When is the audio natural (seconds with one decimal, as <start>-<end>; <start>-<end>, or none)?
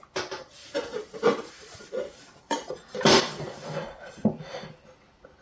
0.0-0.6; 3.8-5.4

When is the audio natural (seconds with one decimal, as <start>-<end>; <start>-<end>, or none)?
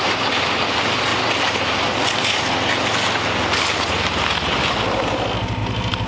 0.0-6.1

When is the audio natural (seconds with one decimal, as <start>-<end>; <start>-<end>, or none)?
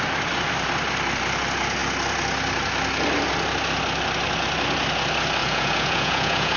0.0-5.4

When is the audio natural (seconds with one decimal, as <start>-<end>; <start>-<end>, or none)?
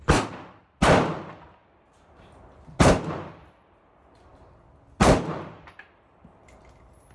0.0-7.1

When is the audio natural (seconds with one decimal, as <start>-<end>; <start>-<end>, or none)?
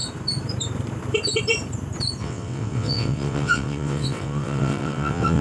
0.0-2.2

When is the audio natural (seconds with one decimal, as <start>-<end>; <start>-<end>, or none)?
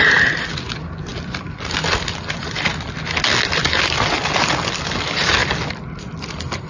0.0-6.7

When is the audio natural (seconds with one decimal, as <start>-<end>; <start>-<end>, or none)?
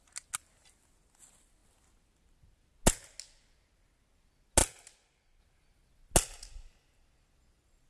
0.0-7.9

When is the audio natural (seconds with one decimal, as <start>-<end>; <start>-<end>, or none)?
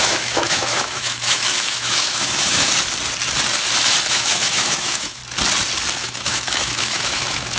2.7-4.1; 5.2-6.0